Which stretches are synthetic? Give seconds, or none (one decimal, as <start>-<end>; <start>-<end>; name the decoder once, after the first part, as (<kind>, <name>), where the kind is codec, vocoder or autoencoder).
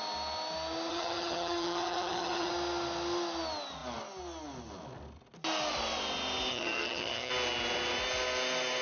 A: 0.9-2.5 (vocoder, HiFi-GAN); 6.5-7.3